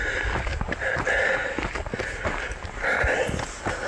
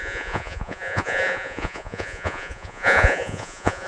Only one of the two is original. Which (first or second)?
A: first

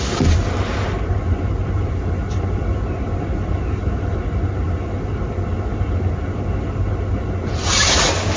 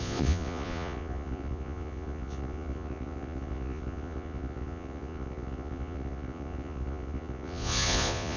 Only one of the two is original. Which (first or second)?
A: first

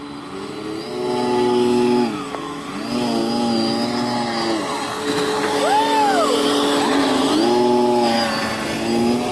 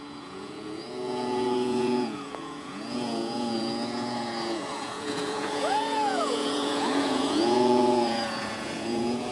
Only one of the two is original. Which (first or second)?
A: first